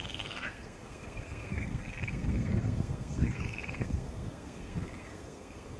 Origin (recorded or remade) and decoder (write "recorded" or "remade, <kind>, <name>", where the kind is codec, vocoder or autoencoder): remade, codec, SNAC